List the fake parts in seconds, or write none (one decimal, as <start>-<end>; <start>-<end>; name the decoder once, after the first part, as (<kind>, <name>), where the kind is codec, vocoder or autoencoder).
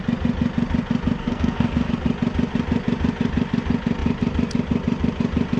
1.2-1.9 (codec, SNAC)